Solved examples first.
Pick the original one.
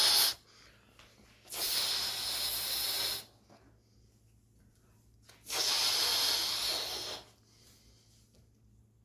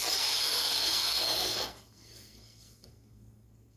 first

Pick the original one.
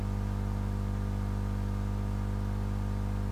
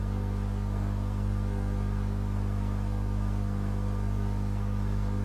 first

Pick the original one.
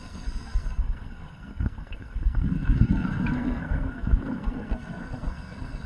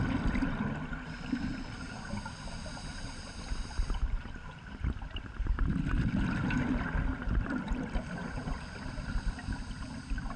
second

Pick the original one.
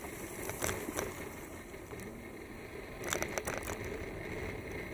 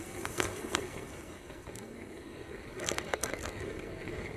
first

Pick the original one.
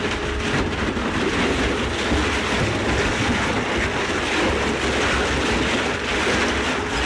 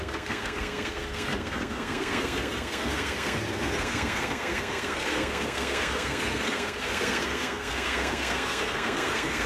first